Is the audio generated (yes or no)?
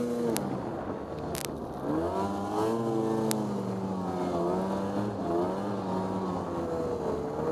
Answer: no